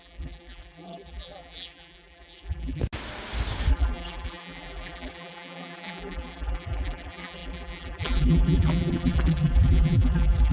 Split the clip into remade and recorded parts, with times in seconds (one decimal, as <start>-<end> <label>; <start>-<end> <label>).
0.0-2.8 remade; 2.8-3.7 recorded; 3.7-10.5 remade